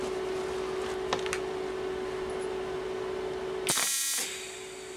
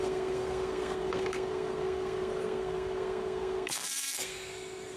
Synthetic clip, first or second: second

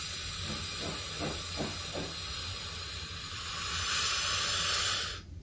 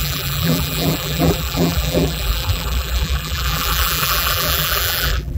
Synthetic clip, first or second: second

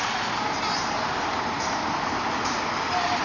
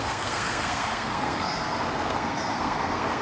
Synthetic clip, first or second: second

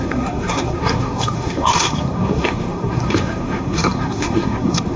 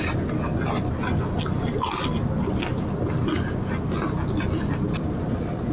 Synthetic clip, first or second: first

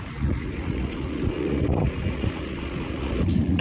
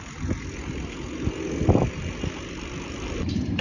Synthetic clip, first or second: first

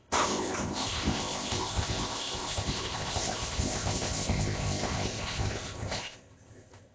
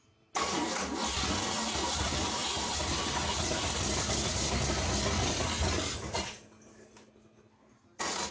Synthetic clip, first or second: first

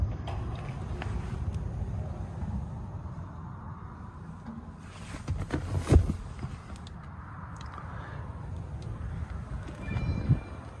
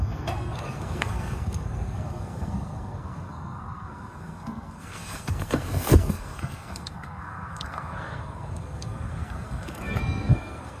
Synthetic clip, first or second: second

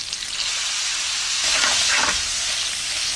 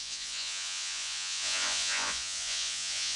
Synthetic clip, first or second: second